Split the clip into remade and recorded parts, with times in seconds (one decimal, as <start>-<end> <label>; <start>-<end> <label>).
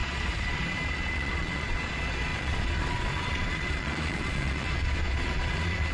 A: 0.0-5.9 remade